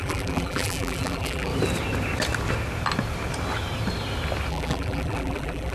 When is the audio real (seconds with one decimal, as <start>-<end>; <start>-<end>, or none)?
1.5-4.5